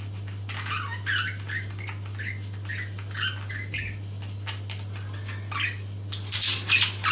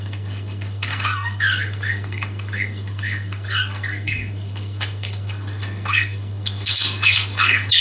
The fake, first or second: second